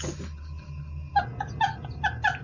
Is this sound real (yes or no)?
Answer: yes